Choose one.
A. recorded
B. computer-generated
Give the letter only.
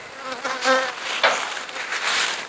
B